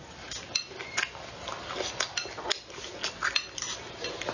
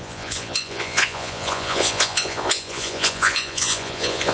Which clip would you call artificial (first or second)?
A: second